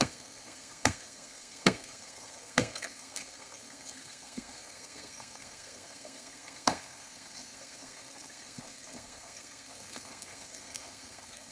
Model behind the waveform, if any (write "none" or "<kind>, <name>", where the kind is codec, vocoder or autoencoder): codec, SNAC